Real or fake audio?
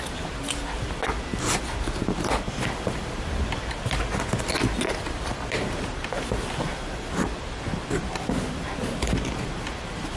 real